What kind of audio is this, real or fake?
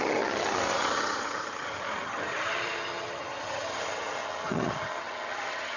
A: fake